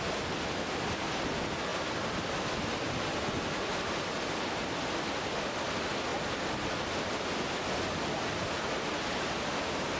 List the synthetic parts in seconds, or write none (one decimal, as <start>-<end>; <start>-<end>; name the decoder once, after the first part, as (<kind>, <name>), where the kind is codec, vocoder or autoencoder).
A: none